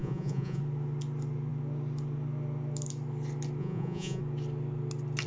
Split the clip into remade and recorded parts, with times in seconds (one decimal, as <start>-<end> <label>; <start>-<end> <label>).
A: 0.0-0.6 remade; 0.6-3.6 recorded; 3.6-4.2 remade; 4.2-5.3 recorded